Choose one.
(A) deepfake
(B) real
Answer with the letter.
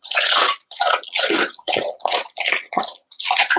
A